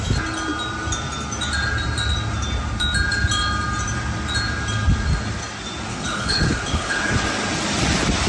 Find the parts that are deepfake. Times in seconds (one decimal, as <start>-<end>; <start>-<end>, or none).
5.9-7.2